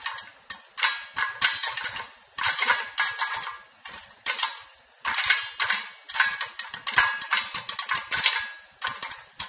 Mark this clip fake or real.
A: real